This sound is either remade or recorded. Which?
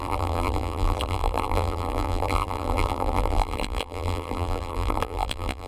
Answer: remade